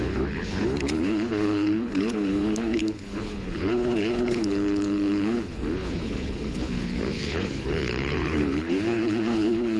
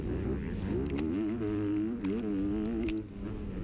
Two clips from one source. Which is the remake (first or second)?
first